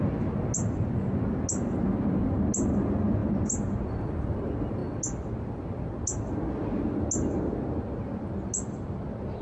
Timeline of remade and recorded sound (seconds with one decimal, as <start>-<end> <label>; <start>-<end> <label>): 0.0-9.4 recorded